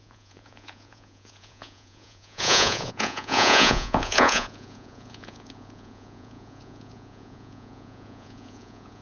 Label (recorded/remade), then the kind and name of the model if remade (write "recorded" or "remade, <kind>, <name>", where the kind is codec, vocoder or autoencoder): remade, vocoder, Vocos